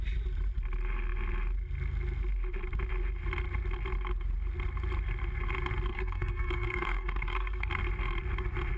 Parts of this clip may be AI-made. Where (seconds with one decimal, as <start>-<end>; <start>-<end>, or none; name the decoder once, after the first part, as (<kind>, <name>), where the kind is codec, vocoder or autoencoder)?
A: 5.9-7.7 (codec, SNAC)